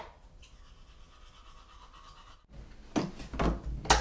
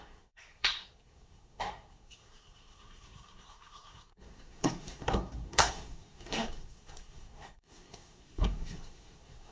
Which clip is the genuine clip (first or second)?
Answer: first